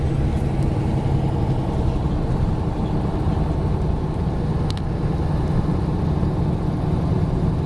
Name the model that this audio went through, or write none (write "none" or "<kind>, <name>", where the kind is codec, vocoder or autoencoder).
none